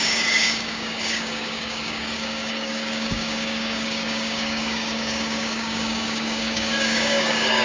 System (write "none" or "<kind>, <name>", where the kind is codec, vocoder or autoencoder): codec, DAC